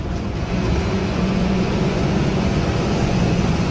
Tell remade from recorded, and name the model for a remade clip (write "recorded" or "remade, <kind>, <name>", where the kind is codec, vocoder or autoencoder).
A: remade, vocoder, Vocos